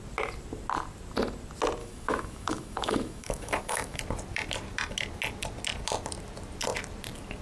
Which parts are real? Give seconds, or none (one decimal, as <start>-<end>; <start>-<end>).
0.0-1.8; 4.0-7.4